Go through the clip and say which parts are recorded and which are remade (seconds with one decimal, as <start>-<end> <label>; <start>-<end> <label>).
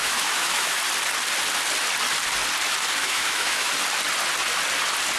0.0-0.8 remade; 0.8-3.0 recorded; 3.0-3.7 remade; 3.7-5.2 recorded